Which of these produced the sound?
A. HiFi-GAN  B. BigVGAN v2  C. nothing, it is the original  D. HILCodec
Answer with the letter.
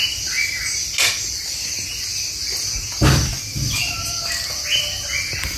C